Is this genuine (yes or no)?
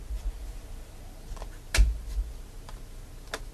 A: yes